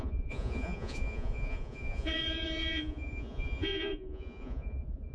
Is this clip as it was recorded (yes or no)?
no